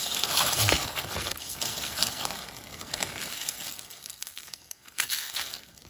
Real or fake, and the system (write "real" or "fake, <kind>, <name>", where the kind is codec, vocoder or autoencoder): fake, codec, SNAC